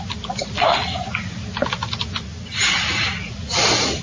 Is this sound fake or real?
real